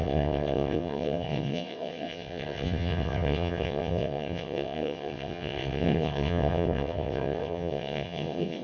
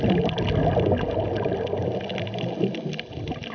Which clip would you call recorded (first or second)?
second